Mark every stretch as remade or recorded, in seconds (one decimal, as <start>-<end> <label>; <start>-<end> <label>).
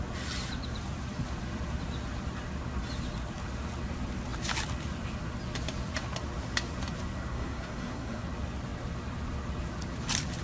0.0-7.3 recorded; 7.3-8.2 remade; 8.2-10.4 recorded